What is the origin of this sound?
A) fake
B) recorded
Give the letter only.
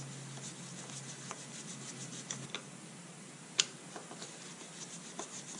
B